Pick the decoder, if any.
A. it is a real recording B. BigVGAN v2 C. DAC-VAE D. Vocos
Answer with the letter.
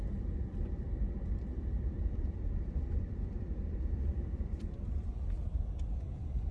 B